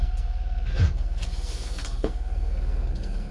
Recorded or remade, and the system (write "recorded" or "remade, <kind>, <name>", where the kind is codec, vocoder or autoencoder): remade, codec, SNAC